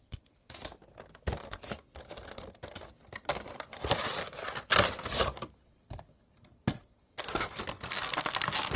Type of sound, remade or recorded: recorded